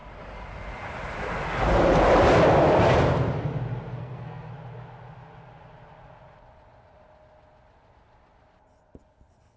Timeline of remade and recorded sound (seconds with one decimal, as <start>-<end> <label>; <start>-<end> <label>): 0.0-3.9 recorded; 3.9-4.5 remade; 4.5-9.6 recorded